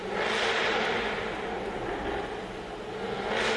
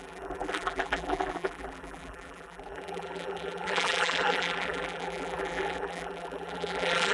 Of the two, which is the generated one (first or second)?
second